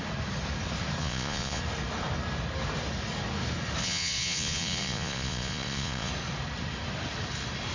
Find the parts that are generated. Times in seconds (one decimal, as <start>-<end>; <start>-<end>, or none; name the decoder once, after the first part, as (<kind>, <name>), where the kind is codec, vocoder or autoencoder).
1.0-1.6 (vocoder, Vocos); 3.8-6.1

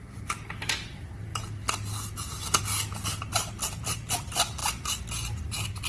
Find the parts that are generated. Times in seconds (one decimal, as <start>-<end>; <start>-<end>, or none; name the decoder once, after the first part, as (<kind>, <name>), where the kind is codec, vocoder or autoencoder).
none

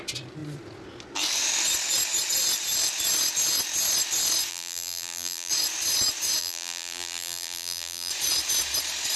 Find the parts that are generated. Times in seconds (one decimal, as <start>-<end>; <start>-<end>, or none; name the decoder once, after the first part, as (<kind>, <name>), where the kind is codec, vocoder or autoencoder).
4.5-5.5 (vocoder, BigVGAN v2); 6.4-8.1

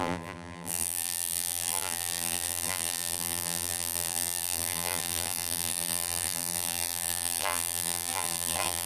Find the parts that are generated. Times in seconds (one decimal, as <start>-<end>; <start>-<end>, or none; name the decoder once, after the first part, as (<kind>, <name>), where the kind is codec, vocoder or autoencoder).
0.0-8.9 (vocoder, BigVGAN v2)

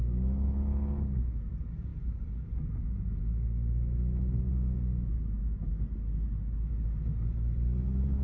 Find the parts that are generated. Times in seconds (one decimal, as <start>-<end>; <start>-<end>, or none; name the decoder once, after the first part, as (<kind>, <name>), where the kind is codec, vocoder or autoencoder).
4.5-5.1 (autoencoder, DAC-VAE)